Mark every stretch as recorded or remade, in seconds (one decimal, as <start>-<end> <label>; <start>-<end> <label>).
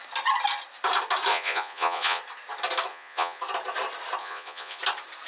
0.0-1.3 recorded; 1.3-2.2 remade; 2.2-2.9 recorded; 2.9-3.4 remade; 3.4-4.2 recorded; 4.2-4.8 remade; 4.8-5.3 recorded